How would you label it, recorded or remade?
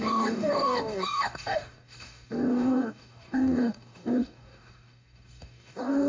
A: remade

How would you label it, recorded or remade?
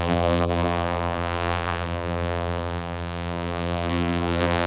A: remade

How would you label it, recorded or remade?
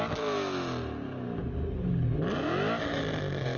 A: recorded